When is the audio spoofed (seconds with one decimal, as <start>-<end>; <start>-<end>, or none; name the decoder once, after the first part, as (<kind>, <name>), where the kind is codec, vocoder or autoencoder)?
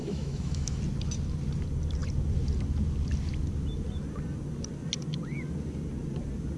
0.0-0.8 (autoencoder, DAC-VAE)